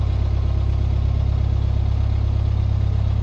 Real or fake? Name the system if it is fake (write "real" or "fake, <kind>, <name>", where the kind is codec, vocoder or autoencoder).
real